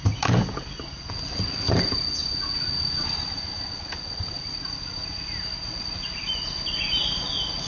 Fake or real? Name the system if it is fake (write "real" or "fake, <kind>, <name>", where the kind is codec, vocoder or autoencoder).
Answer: real